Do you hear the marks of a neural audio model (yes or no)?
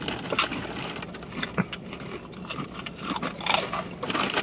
no